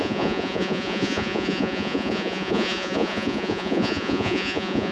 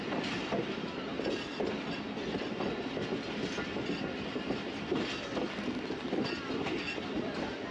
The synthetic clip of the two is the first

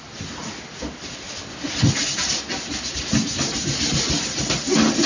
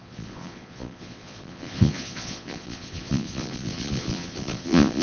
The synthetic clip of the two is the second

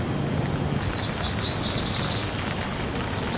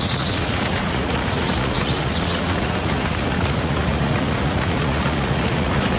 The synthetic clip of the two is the second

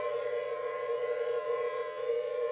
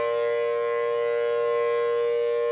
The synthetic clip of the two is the first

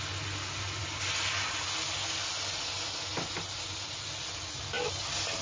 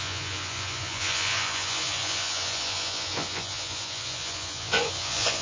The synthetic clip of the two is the second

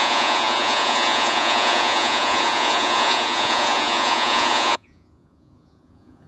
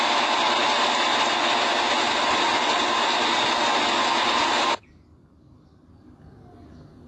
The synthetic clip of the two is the first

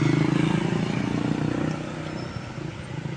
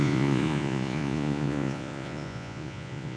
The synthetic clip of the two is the second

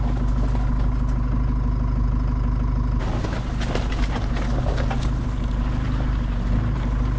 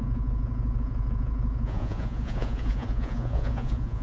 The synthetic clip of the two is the second